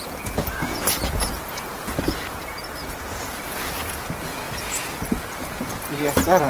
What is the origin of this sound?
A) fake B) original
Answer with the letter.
A